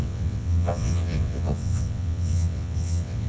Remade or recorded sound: remade